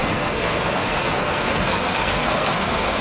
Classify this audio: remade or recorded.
remade